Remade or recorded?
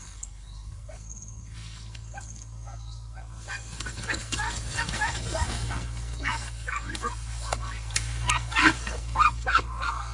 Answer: remade